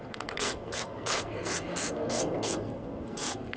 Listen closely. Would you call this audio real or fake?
fake